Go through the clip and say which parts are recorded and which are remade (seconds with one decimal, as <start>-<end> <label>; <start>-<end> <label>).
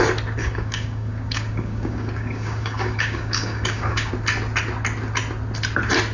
0.0-0.4 recorded; 0.4-4.1 remade; 4.1-6.1 recorded